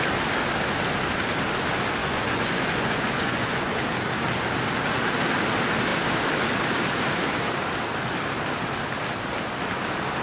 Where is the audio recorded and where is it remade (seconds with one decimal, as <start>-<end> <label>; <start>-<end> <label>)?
0.0-2.0 recorded; 2.0-3.8 remade; 3.8-10.2 recorded